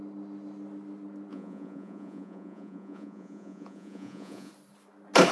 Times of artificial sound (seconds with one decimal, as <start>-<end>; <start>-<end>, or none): 1.3-4.5